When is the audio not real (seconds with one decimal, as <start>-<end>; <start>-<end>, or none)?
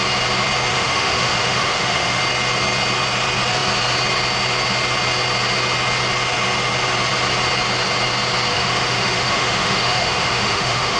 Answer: 0.7-2.2; 8.5-11.0